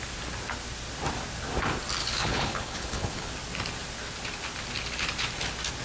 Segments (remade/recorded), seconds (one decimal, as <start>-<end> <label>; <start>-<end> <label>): 0.0-2.0 recorded; 2.0-3.3 remade; 3.3-5.8 recorded